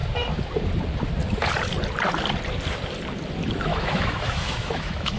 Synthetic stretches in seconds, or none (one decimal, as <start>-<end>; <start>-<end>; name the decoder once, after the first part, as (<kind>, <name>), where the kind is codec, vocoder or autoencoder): 3.7-5.2 (autoencoder, DAC-VAE)